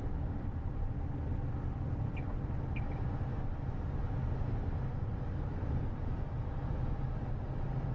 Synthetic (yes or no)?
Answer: no